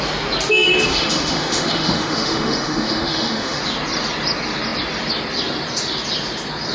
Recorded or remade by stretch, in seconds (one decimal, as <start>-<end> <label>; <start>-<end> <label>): 0.0-0.9 recorded; 0.9-3.6 remade; 3.6-6.7 recorded

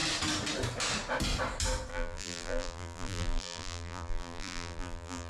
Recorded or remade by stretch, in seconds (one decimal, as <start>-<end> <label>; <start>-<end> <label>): 0.0-1.9 recorded; 1.9-5.3 remade

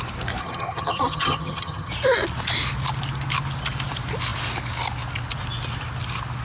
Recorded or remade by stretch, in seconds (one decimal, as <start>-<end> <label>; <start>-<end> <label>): 0.0-0.4 recorded; 0.4-1.9 remade; 1.9-6.4 recorded

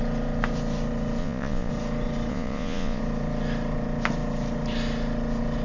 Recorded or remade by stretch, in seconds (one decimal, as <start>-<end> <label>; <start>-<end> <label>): 0.0-1.2 recorded; 1.2-1.7 remade; 1.7-2.3 recorded; 2.3-3.0 remade; 3.0-5.6 recorded

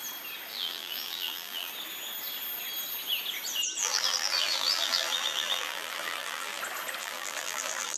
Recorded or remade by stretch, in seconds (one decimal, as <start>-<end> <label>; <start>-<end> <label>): 0.0-0.5 recorded; 0.5-1.7 remade; 1.7-3.8 recorded; 3.8-6.6 remade; 6.6-7.0 recorded; 7.0-8.0 remade

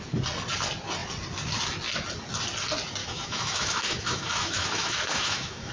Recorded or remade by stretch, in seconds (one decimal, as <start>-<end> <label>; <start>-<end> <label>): 0.0-3.0 recorded; 3.0-5.7 remade